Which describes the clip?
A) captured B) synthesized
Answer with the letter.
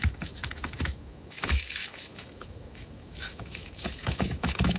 B